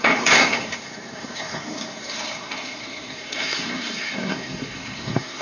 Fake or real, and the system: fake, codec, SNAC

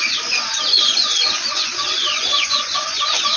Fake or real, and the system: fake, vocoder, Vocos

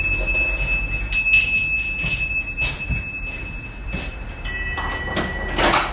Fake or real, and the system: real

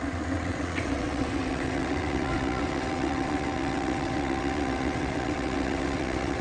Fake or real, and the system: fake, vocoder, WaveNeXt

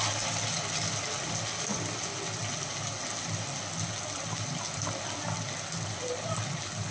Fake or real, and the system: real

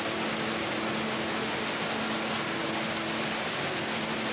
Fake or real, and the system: real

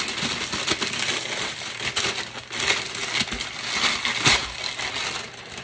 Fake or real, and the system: real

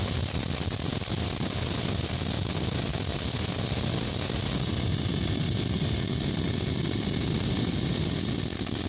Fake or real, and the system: real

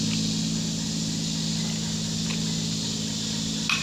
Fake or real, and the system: real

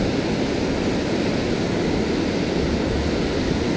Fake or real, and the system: real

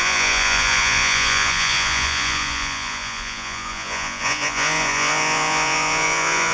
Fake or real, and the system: fake, vocoder, Vocos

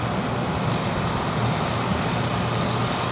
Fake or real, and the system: real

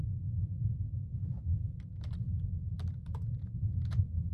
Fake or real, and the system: fake, vocoder, BigVGAN v2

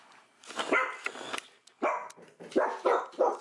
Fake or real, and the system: real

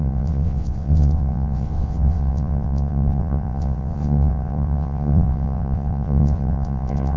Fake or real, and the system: fake, vocoder, WaveNeXt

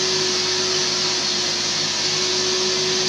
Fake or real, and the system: real